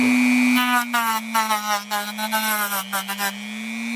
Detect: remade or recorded recorded